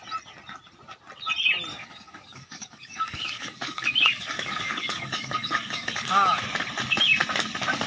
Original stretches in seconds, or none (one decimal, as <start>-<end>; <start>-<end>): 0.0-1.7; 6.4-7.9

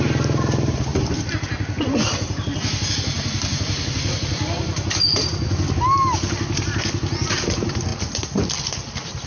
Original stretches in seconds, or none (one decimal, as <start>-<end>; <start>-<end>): 0.0-9.3

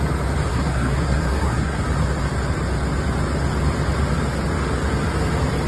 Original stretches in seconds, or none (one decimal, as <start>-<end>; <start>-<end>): 0.0-0.5; 1.8-5.7

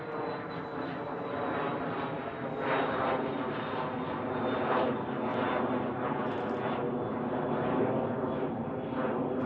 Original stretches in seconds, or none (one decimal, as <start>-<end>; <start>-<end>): 0.0-9.5